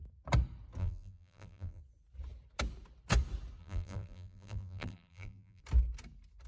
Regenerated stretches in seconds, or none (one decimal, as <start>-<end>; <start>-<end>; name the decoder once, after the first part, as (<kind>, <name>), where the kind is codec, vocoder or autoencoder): 0.8-1.8 (vocoder, BigVGAN v2); 3.6-5.6